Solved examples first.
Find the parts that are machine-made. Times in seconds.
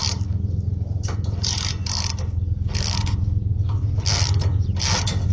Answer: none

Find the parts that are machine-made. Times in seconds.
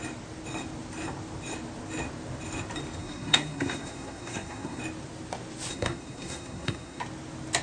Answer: 3.0-4.8 (codec, SNAC); 5.7-7.0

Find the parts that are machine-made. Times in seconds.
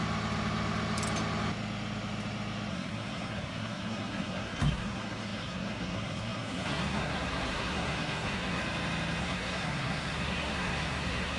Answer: 2.7-8.6 (codec, SNAC); 9.2-11.4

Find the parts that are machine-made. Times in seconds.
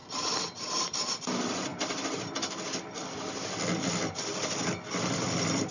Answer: 0.0-1.7 (vocoder, BigVGAN v2); 4.1-5.7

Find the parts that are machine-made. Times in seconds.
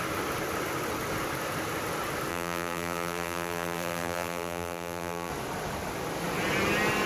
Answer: 2.3-5.3 (vocoder, BigVGAN v2)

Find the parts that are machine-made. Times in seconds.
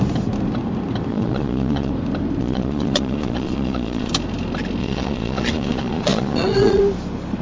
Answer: 1.1-1.9 (vocoder, Vocos); 2.4-4.1; 4.8-6.8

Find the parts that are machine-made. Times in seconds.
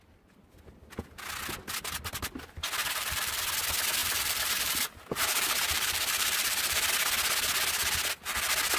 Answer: 2.8-3.4 (vocoder, BigVGAN v2); 4.0-6.9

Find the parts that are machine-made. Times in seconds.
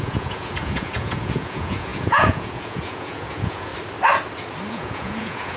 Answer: 0.0-3.7 (vocoder, Vocos); 4.7-5.6